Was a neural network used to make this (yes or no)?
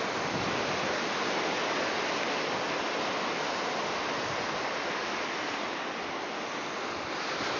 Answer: no